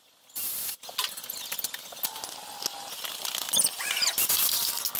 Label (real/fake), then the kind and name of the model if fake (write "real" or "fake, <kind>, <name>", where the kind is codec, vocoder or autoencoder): real